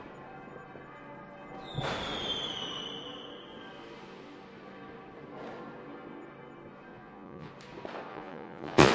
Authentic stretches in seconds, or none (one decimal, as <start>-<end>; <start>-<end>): 0.0-6.9; 7.5-8.1